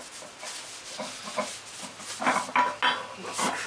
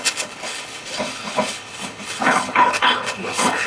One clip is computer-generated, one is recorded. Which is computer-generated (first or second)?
second